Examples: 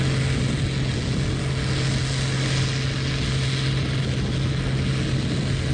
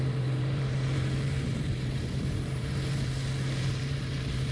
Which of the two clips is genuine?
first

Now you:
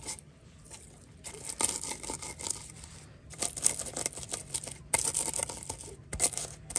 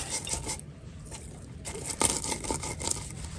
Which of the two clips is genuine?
first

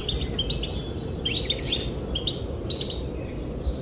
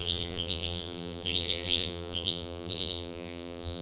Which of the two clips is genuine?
first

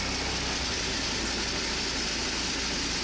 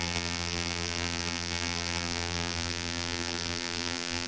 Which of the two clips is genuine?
first